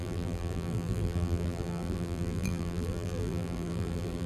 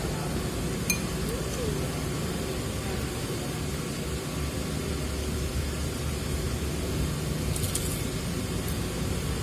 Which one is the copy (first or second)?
first